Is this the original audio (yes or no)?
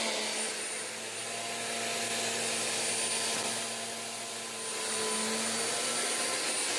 yes